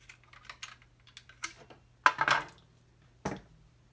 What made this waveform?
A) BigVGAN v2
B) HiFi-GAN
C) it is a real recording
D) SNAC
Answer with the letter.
C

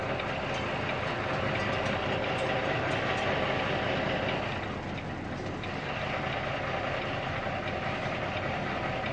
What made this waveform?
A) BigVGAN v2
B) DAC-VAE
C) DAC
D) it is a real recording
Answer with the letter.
D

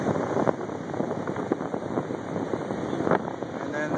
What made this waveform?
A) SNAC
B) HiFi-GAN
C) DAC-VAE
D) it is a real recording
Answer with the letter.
D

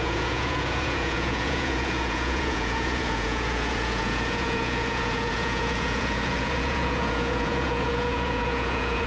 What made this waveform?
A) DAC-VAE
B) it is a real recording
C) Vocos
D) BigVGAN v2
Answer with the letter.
C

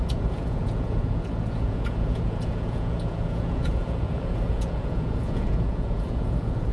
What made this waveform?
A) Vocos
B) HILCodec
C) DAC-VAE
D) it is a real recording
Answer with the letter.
A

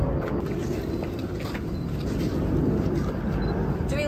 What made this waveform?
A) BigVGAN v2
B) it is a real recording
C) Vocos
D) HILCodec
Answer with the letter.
B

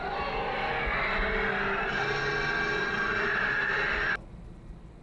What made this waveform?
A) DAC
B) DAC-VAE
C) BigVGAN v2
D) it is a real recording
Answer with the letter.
D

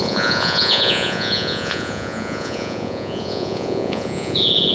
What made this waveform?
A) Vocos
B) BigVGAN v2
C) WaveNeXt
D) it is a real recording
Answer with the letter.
A